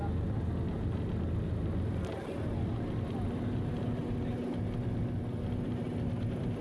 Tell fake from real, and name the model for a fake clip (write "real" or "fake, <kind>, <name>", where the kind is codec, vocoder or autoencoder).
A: real